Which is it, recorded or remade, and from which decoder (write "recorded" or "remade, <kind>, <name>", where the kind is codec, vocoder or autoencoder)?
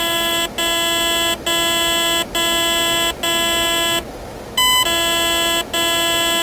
recorded